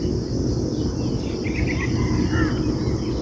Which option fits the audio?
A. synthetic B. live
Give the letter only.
B